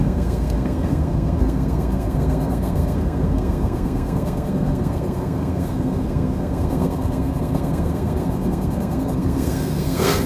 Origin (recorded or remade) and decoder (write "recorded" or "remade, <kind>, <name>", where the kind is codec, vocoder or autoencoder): remade, codec, SNAC